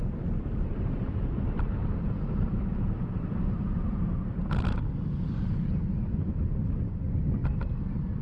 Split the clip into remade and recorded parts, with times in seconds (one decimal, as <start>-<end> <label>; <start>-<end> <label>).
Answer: 0.0-0.7 recorded; 0.7-4.2 remade; 4.2-8.2 recorded